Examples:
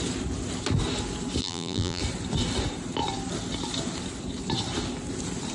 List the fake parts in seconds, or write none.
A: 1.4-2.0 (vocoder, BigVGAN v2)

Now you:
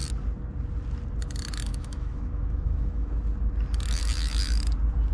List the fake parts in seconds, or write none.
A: 1.7-3.2 (autoencoder, DAC-VAE)

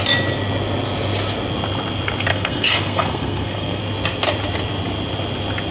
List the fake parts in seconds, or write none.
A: 2.3-3.8 (codec, SNAC)

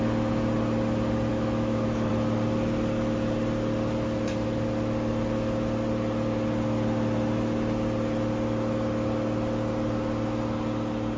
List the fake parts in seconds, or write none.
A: 1.3-2.1 (autoencoder, DAC-VAE)

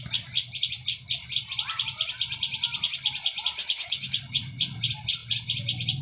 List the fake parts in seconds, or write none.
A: 3.6-4.2 (autoencoder, DAC-VAE)

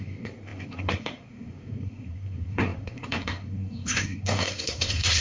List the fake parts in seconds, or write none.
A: 0.0-5.2 (codec, SNAC)